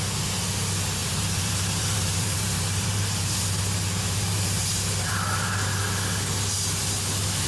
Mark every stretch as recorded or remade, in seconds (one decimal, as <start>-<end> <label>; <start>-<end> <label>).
0.0-1.0 recorded; 1.0-5.1 remade; 5.1-7.5 recorded